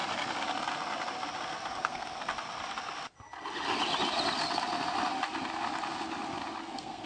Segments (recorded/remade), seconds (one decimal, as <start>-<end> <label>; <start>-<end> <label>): 0.0-1.7 recorded; 1.7-2.3 remade; 2.3-6.6 recorded; 6.6-7.1 remade